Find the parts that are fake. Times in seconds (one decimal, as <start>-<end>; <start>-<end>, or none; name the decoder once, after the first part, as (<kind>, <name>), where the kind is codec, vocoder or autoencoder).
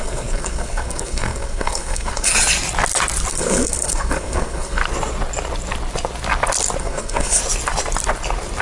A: 0.0-2.3 (codec, SNAC); 3.3-4.8; 6.8-7.4